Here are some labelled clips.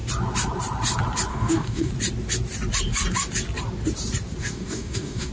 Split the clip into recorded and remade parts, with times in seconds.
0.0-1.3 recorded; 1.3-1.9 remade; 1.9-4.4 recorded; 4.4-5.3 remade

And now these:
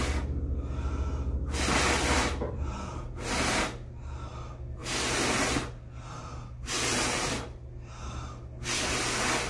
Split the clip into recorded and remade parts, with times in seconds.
0.0-9.5 recorded

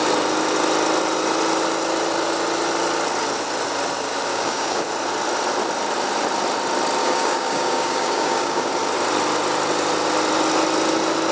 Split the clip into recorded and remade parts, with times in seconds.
0.0-4.3 recorded; 4.3-4.8 remade; 4.8-7.0 recorded; 7.0-8.7 remade; 8.7-11.3 recorded

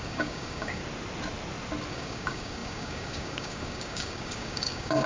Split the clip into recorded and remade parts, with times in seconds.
0.0-0.8 remade; 0.8-1.9 recorded; 1.9-5.1 remade

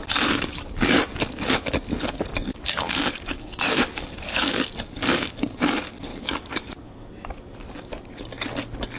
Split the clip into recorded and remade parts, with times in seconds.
0.0-2.3 recorded; 2.3-5.3 remade; 5.3-6.1 recorded; 6.1-7.1 remade; 7.1-9.0 recorded

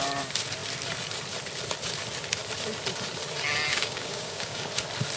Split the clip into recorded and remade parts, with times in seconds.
0.0-3.7 recorded; 3.7-4.7 remade; 4.7-5.2 recorded

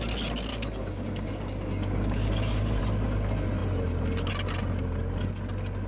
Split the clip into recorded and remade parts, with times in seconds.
0.0-0.5 recorded; 0.5-2.8 remade; 2.8-5.9 recorded